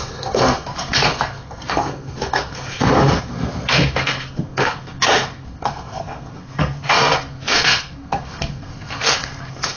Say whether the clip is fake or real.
fake